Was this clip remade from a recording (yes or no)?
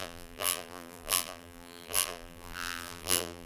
yes